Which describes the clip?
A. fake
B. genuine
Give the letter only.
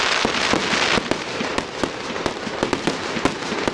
B